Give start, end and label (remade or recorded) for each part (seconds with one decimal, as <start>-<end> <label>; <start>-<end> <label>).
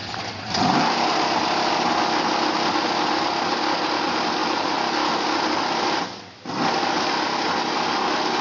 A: 0.0-8.4 recorded